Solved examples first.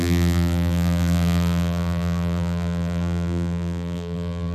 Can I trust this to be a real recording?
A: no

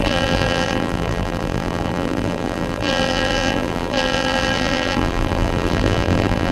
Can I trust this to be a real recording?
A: no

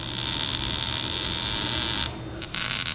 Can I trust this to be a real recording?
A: yes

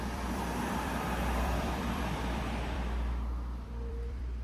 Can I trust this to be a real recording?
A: no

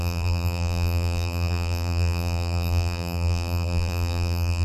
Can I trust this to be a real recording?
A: no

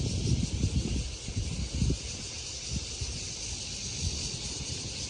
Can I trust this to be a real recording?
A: yes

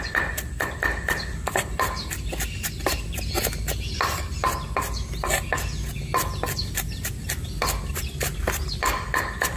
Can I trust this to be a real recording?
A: yes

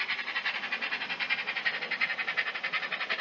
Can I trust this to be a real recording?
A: yes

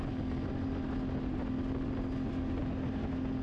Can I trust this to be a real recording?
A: yes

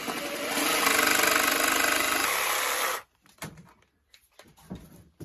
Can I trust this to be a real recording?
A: yes